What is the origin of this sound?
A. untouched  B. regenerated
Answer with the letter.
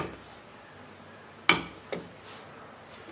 A